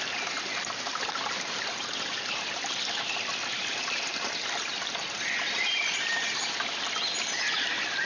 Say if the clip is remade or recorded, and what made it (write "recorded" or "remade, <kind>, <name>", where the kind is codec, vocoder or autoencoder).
recorded